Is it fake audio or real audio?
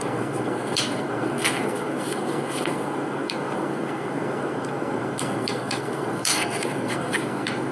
fake